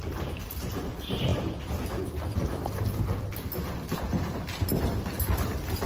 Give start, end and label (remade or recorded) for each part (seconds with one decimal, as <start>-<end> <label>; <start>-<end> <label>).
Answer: 0.0-5.9 recorded